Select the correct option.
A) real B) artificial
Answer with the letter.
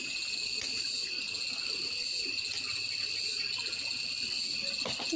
A